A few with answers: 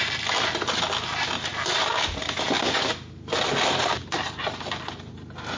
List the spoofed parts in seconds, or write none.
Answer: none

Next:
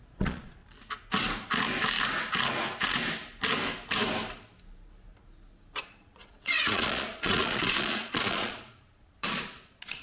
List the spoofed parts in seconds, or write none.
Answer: 0.0-0.6 (vocoder, Vocos); 5.8-10.0

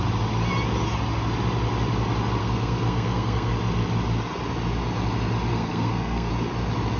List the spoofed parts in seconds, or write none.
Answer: 2.4-3.5 (codec, SNAC); 5.5-6.3

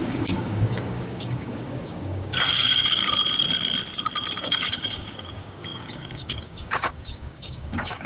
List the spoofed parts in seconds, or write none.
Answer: 0.0-3.0 (codec, DAC); 4.4-8.1